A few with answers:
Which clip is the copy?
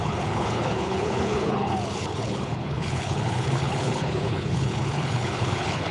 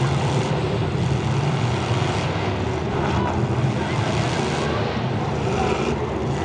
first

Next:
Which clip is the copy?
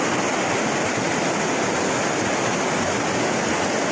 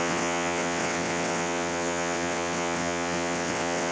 second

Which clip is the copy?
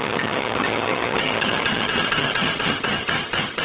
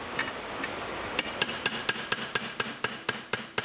first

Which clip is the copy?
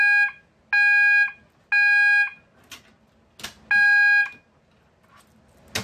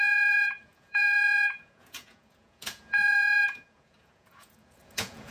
second